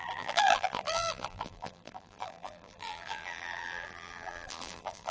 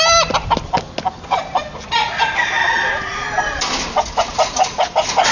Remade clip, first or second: first